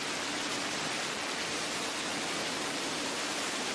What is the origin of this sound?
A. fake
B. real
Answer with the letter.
B